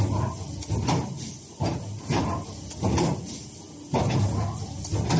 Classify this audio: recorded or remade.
recorded